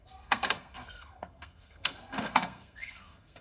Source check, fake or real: fake